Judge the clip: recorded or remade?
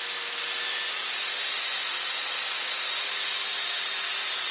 recorded